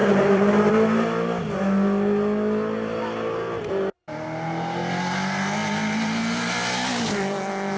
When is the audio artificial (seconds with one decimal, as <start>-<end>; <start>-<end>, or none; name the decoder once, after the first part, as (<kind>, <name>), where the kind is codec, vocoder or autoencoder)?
0.0-0.7 (vocoder, BigVGAN v2)